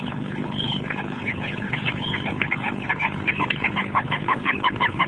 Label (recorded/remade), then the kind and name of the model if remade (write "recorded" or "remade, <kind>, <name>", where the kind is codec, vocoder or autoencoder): remade, codec, HILCodec